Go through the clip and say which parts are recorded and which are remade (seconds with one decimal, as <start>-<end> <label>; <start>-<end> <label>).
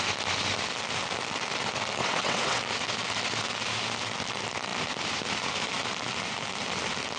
0.0-2.0 recorded; 2.0-2.6 remade; 2.6-7.2 recorded